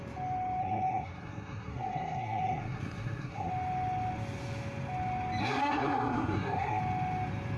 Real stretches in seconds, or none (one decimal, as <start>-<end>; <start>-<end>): 0.0-0.6; 3.5-5.4; 6.8-7.6